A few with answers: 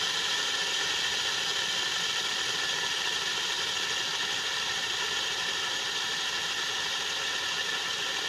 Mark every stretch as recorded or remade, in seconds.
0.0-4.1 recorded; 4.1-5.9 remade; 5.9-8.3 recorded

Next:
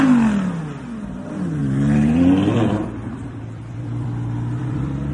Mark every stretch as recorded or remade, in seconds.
0.0-1.6 recorded; 1.6-5.1 remade

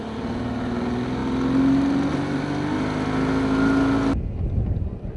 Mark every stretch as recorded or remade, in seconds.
0.0-5.2 recorded

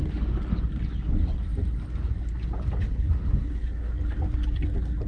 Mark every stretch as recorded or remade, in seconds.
0.0-5.1 recorded

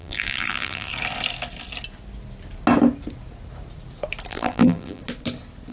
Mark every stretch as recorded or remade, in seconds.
0.0-0.9 remade; 0.9-4.3 recorded; 4.3-5.0 remade; 5.0-5.7 recorded

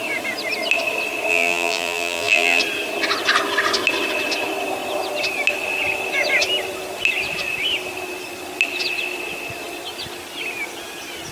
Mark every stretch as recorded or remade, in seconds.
0.0-1.3 recorded; 1.3-2.6 remade; 2.6-11.3 recorded

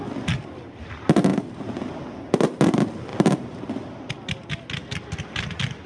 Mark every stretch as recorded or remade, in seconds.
0.0-3.1 recorded; 3.1-3.6 remade; 3.6-5.9 recorded